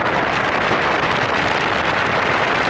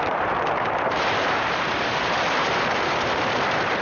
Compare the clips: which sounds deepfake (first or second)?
second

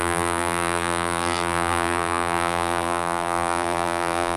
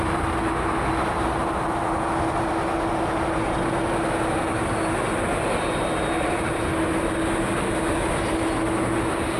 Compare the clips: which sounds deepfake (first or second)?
first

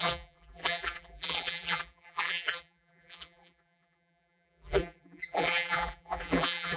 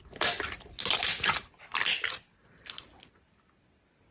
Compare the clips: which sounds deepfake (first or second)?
first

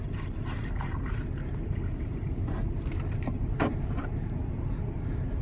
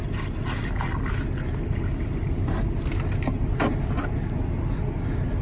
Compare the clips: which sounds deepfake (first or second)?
first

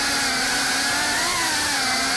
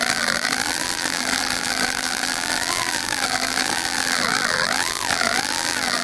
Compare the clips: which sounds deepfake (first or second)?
second